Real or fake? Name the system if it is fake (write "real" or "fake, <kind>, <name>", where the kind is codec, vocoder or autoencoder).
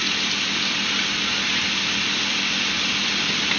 real